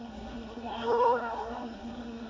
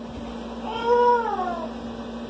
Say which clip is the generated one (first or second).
first